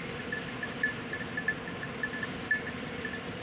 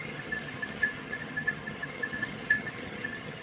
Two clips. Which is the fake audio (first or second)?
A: second